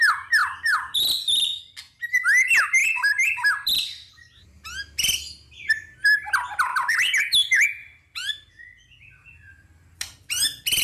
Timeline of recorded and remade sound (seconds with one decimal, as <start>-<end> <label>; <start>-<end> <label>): 0.0-0.4 recorded; 0.4-1.6 remade; 1.6-2.8 recorded; 2.8-4.1 remade; 4.1-6.7 recorded; 6.7-7.2 remade; 7.2-7.8 recorded; 7.8-8.3 remade; 8.3-10.8 recorded